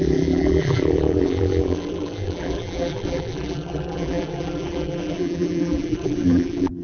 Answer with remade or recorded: remade